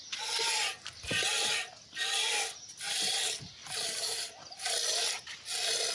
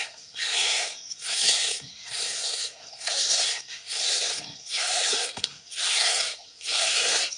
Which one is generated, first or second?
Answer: second